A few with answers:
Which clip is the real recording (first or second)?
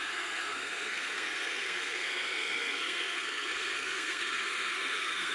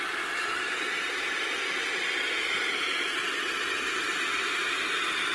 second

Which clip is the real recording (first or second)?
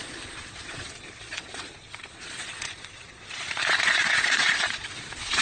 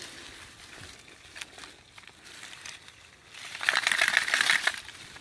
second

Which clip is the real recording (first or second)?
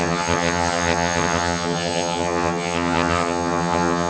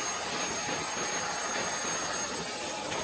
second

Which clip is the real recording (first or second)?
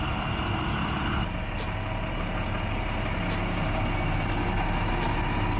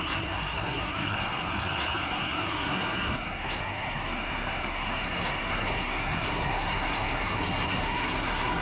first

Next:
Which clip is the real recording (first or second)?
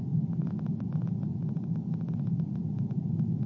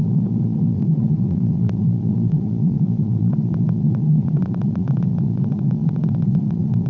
first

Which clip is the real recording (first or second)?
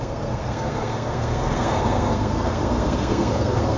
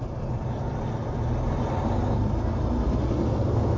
second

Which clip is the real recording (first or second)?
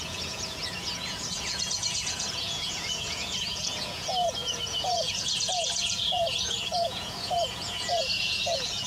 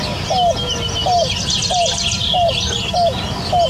second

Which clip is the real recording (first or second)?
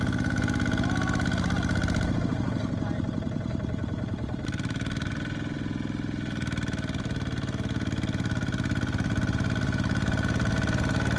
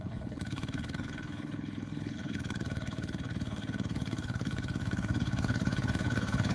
first